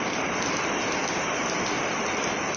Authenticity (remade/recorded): recorded